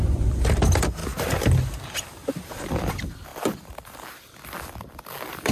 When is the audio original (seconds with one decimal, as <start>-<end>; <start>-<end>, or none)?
0.0-5.5